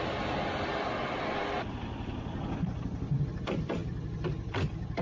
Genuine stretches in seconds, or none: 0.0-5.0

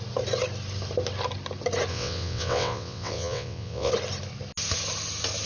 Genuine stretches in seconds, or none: 0.0-1.9; 3.9-5.5

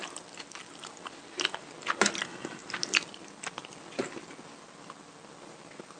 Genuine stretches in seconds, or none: 0.0-6.0

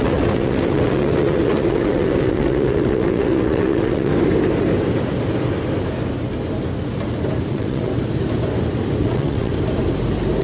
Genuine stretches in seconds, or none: 4.1-7.5; 7.9-9.0; 9.5-10.4

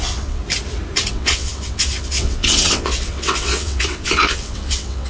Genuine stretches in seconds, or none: 0.4-1.1